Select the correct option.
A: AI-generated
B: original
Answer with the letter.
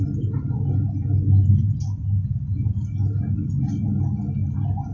B